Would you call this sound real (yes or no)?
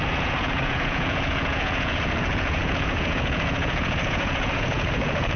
no